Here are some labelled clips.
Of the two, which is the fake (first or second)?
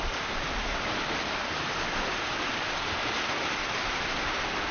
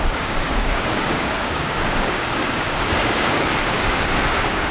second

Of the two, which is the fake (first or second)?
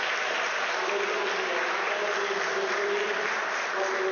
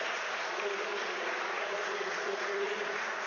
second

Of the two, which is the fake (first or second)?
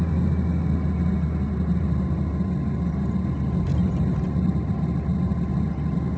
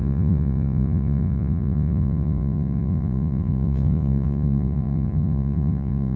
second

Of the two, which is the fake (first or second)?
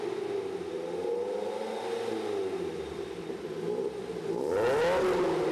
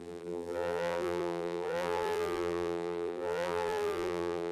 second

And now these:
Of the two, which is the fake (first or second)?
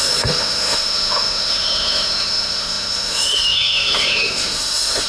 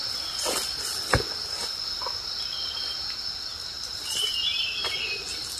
first